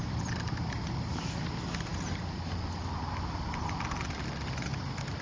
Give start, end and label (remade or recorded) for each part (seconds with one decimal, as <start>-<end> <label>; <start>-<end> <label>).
0.0-5.2 recorded